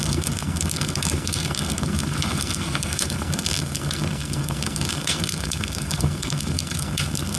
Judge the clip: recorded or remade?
remade